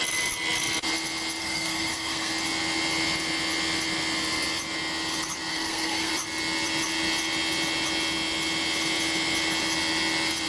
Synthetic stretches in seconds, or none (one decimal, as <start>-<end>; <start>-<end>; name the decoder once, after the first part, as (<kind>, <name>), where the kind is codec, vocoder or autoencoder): 1.4-2.3 (codec, SNAC); 5.5-6.1